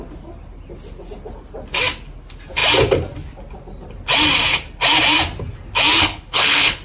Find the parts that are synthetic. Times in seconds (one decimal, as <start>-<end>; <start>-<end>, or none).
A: 6.0-6.8